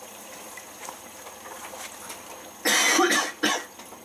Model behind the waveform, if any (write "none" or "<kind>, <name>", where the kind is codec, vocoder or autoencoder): none